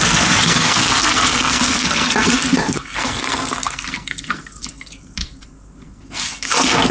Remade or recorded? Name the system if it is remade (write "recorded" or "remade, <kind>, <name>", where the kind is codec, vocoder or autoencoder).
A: remade, codec, SNAC